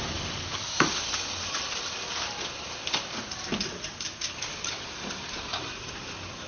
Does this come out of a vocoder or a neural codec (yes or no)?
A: no